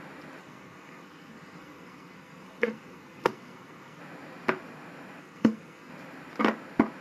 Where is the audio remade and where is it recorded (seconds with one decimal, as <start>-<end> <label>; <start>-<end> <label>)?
0.0-0.4 recorded; 0.4-4.0 remade; 4.0-5.2 recorded; 5.2-5.9 remade; 5.9-7.0 recorded